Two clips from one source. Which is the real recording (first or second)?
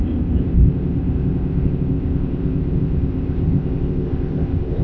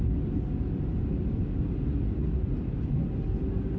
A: second